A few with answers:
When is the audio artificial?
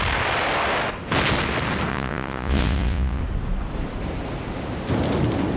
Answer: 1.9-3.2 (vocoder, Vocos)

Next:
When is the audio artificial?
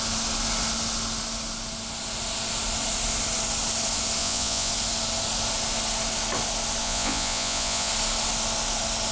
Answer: 4.2-4.7 (vocoder, Vocos); 6.8-7.9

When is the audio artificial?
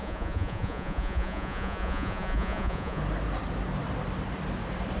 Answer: 0.0-3.0 (vocoder, Vocos)